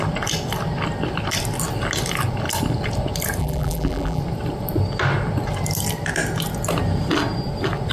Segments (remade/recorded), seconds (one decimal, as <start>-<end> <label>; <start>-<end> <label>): 0.0-3.4 recorded; 3.4-4.2 remade; 4.2-7.9 recorded